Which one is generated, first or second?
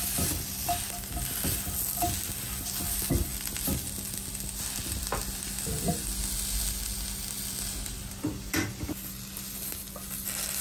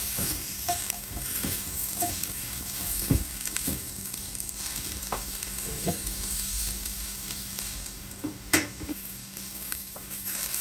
second